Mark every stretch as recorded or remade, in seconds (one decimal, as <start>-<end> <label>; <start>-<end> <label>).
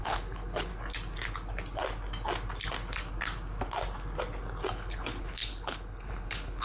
0.0-0.7 remade; 0.7-4.7 recorded; 4.7-6.6 remade